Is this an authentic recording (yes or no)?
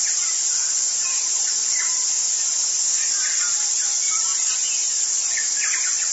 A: yes